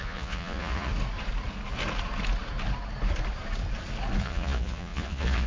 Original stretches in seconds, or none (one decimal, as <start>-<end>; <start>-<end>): 0.9-4.2